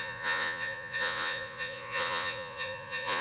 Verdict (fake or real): fake